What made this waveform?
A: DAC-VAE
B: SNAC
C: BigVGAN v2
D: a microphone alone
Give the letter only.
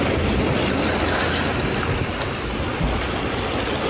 D